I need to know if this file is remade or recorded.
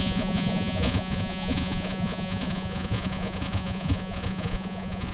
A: remade